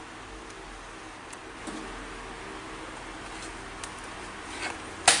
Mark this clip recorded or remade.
recorded